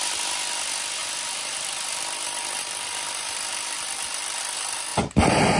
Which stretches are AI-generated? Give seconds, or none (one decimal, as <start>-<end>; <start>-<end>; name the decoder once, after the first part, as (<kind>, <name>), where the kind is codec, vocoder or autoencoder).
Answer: 1.0-4.4 (vocoder, BigVGAN v2)